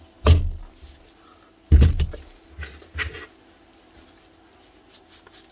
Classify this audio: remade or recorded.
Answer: recorded